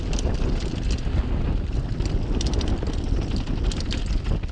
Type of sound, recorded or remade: recorded